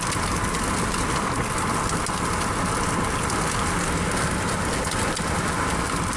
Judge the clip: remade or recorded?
recorded